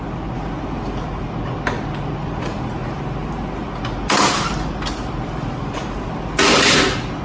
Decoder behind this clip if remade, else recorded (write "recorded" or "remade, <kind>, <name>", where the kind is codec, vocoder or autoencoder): recorded